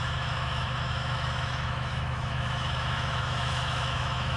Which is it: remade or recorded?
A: remade